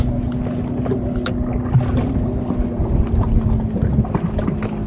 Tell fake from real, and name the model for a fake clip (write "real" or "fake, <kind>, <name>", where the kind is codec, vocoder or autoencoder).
real